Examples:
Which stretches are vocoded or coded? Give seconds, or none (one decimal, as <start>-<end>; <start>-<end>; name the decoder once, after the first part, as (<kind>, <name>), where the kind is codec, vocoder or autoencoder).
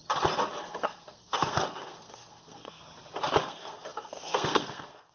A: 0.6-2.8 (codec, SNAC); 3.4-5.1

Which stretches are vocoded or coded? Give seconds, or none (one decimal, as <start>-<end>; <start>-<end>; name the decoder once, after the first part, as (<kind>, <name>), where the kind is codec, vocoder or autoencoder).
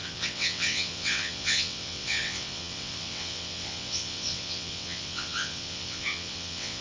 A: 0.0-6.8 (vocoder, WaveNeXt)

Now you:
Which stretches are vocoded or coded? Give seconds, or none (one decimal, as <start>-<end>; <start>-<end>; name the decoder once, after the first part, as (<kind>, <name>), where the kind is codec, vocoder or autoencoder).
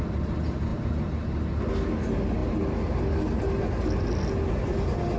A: none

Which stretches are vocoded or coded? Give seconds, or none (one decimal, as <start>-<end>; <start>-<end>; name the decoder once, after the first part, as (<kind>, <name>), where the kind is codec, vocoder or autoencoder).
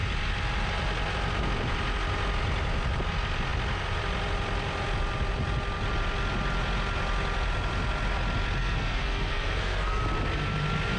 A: 8.6-10.0 (codec, SNAC)